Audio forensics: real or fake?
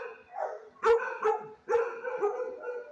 real